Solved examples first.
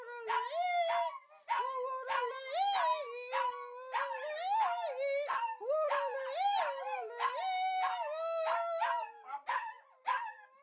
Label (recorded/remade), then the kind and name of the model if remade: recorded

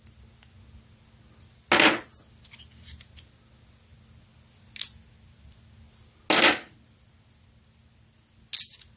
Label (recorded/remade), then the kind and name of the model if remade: recorded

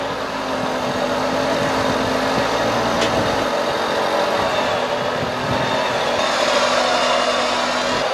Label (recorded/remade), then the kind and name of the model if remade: recorded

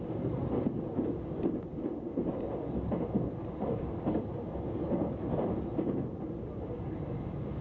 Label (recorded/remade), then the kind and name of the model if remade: recorded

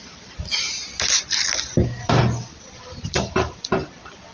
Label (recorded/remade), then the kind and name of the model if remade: recorded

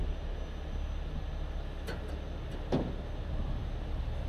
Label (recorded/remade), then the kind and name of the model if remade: recorded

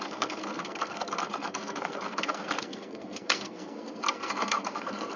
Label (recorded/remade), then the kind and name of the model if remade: remade, codec, SNAC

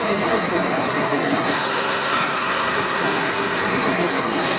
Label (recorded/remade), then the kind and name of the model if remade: remade, codec, SNAC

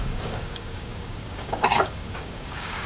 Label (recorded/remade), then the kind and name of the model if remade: remade, codec, DAC